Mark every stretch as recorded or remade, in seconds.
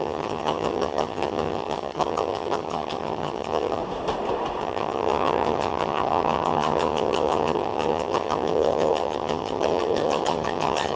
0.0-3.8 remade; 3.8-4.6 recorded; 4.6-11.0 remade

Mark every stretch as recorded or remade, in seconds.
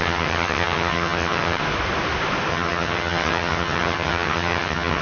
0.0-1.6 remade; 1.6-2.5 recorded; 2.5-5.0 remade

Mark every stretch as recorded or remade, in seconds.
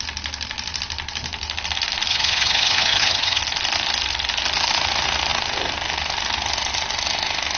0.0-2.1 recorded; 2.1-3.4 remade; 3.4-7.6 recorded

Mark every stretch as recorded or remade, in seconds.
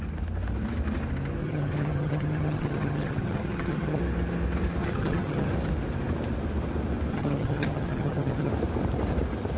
0.0-1.4 recorded; 1.4-4.0 remade; 4.0-4.8 recorded; 4.8-5.5 remade; 5.5-7.1 recorded; 7.1-8.5 remade; 8.5-9.6 recorded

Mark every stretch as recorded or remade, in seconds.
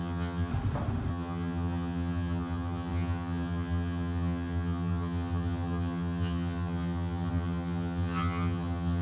0.0-0.5 remade; 0.5-1.1 recorded; 1.1-9.0 remade